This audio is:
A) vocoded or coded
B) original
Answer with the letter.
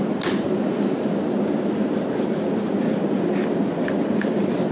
B